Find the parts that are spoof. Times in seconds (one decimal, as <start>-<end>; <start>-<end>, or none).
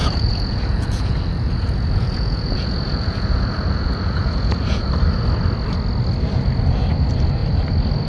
0.0-4.9